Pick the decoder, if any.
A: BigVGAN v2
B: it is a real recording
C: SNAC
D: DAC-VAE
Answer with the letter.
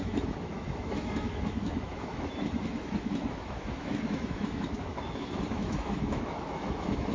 D